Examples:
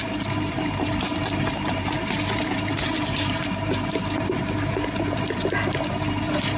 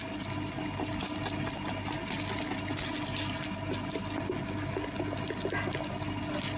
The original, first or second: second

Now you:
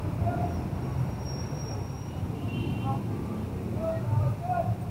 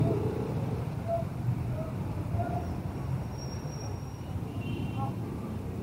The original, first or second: first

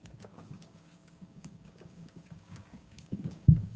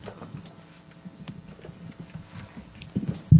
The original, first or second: second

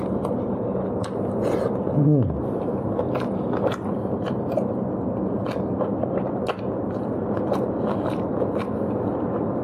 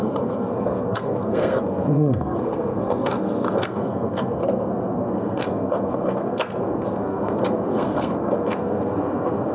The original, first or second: first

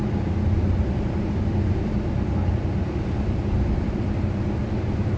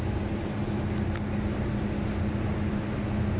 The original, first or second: second